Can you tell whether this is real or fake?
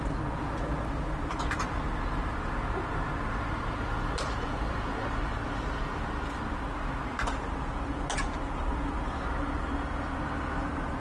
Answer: real